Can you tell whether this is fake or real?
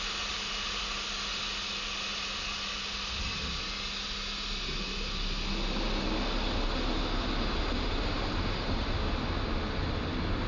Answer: real